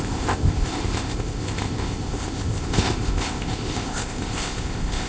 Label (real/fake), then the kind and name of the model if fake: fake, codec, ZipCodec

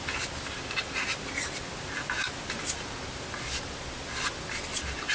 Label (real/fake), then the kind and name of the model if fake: real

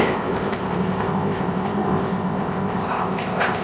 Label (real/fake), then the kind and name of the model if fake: fake, codec, ZipCodec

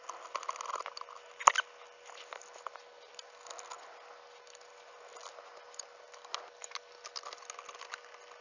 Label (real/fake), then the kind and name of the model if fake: real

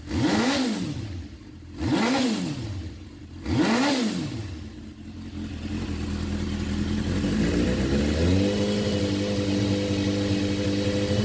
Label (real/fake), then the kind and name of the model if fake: real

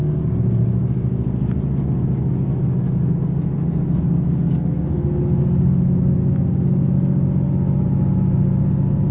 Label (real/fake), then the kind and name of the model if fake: real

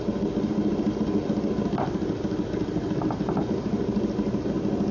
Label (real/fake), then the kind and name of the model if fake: real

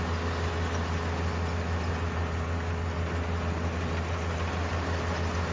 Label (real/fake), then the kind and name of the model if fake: real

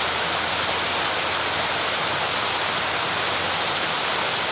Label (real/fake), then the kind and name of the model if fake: real